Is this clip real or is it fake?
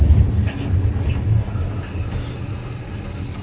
real